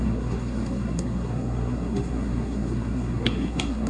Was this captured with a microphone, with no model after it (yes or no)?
no